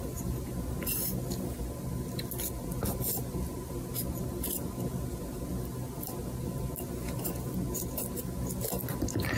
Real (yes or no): yes